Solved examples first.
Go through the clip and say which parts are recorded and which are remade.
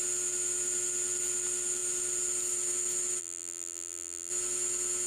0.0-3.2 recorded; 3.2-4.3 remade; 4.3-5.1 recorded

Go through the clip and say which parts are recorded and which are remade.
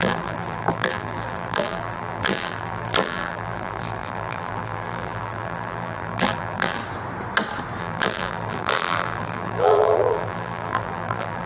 0.0-6.8 remade; 6.8-7.8 recorded; 7.8-11.5 remade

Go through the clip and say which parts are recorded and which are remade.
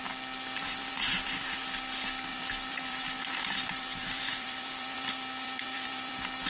0.0-0.6 recorded; 0.6-1.6 remade; 1.6-2.3 recorded; 2.3-6.1 remade; 6.1-6.5 recorded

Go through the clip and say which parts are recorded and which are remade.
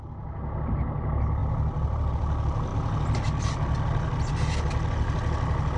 0.0-5.8 recorded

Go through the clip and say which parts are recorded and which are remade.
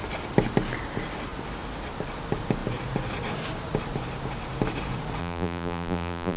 0.0-5.2 recorded; 5.2-6.4 remade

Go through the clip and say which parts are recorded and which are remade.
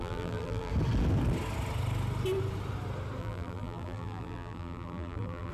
0.0-0.7 remade; 0.7-3.2 recorded; 3.2-5.5 remade